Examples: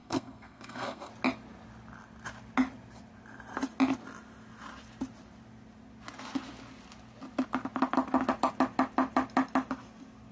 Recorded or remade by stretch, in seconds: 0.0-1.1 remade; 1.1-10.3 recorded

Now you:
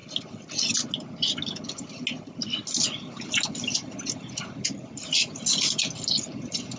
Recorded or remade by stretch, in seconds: 0.0-6.8 recorded

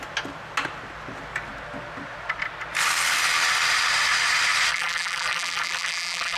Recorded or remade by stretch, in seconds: 0.0-4.7 recorded; 4.7-6.4 remade